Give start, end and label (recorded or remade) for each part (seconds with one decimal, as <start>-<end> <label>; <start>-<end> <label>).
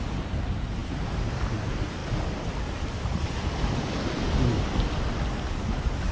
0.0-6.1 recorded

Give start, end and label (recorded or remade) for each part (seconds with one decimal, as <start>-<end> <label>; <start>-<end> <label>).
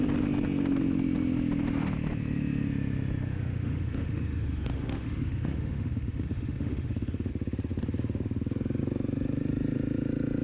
0.0-3.3 recorded; 3.3-7.3 remade; 7.3-10.4 recorded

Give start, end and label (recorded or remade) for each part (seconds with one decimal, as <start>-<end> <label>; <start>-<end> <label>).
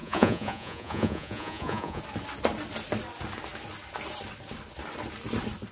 0.0-2.0 remade; 2.0-5.7 recorded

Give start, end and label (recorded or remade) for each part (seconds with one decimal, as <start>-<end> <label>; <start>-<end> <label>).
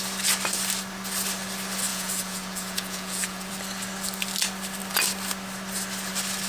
0.0-1.9 recorded; 1.9-3.5 remade; 3.5-6.5 recorded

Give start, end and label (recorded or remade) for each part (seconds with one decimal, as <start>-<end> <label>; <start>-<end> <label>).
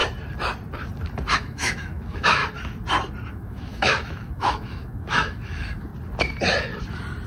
0.0-1.3 recorded; 1.3-2.4 remade; 2.4-3.3 recorded; 3.3-5.9 remade; 5.9-7.3 recorded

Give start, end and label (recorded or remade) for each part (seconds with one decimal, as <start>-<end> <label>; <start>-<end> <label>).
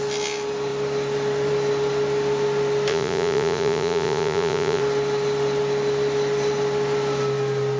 0.0-2.9 recorded; 2.9-4.8 remade; 4.8-7.8 recorded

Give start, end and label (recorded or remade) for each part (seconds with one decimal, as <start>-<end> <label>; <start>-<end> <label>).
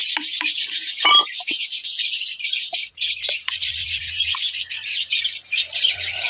0.0-6.3 remade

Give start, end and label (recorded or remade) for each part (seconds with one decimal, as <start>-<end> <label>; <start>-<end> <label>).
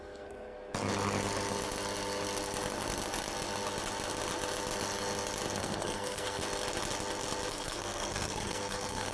0.0-0.7 remade; 0.7-5.6 recorded; 5.6-6.4 remade; 6.4-7.5 recorded; 7.5-9.1 remade